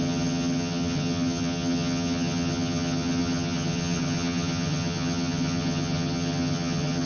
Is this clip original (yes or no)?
no